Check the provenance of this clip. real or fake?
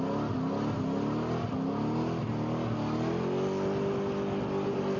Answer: real